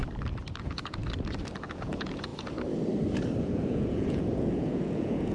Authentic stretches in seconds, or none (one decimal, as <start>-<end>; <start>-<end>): 0.0-0.6; 1.0-1.6; 2.3-3.4